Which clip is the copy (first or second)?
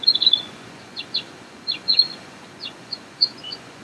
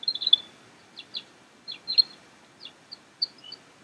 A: first